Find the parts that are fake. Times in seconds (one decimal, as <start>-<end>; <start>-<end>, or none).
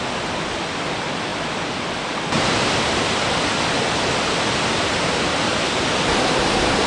none